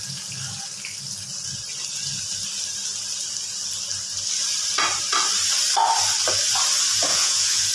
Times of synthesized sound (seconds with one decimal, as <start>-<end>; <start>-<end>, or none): 7.1-7.7